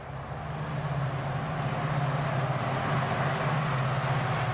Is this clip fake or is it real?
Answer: real